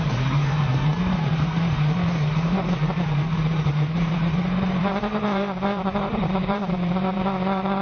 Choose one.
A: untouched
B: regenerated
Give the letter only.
B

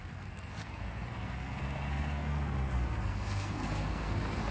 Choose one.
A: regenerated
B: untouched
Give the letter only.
A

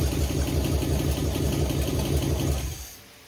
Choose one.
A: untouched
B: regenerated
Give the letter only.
A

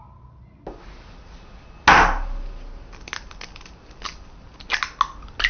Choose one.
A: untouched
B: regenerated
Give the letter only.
A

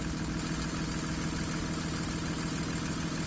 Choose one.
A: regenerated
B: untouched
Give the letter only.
B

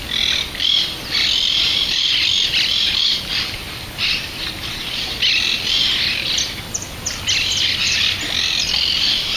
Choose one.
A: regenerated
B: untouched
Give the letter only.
B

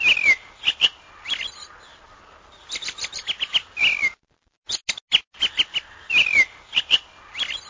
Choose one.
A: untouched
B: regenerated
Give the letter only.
A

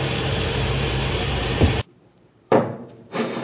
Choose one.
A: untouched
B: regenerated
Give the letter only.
B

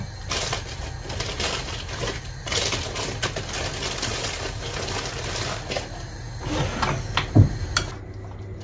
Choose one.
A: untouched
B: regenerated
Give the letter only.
A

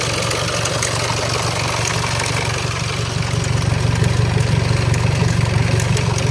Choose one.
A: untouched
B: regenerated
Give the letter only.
A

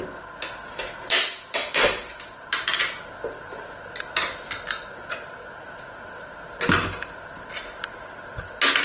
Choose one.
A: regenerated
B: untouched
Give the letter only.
B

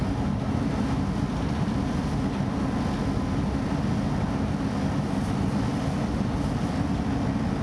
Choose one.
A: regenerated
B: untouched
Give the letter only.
B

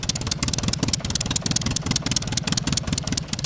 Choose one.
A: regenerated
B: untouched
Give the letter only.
B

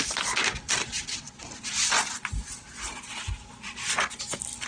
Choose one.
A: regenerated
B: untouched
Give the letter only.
B